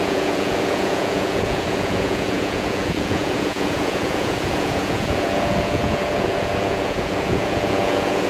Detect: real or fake fake